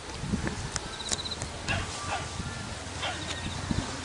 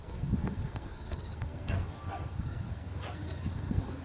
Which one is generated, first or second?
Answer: second